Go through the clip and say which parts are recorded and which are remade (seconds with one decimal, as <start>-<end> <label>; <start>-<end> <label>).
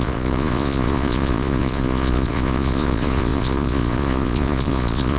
0.0-5.2 remade